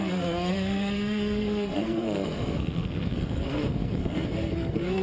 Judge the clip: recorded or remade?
remade